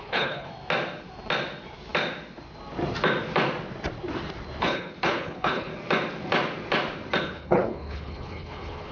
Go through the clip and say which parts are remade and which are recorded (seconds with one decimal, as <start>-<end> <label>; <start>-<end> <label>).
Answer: 0.0-0.5 remade; 0.5-4.6 recorded; 4.6-5.7 remade; 5.7-7.2 recorded; 7.2-8.9 remade